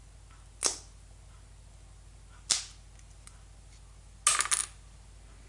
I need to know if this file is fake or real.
real